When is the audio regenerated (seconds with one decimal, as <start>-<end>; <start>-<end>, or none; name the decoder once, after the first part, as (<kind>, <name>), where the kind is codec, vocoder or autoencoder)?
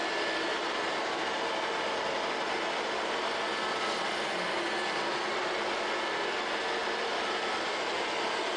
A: none